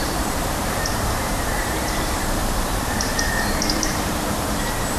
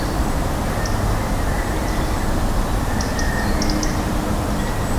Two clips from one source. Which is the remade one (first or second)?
first